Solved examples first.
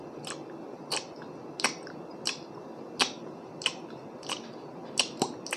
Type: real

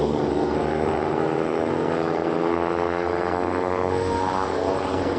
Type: fake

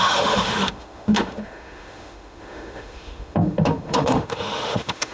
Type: fake